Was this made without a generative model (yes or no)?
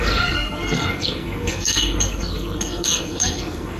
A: no